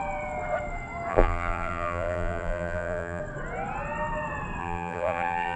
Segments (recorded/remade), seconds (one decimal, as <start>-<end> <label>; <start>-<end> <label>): 0.0-1.1 recorded; 1.1-3.2 remade; 3.2-4.6 recorded; 4.6-5.6 remade